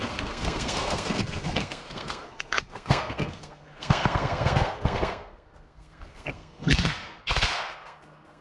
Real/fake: fake